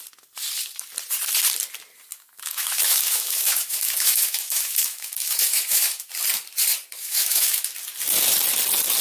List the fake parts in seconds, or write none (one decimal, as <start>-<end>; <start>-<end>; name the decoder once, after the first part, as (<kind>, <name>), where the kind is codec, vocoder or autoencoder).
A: 2.1-6.1 (autoencoder, DAC-VAE); 7.0-7.7